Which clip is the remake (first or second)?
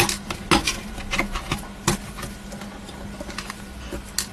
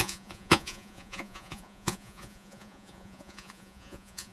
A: second